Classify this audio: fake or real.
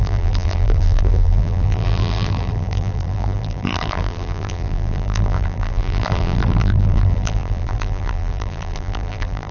fake